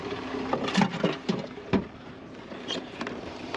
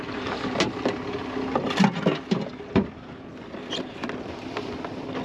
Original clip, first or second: second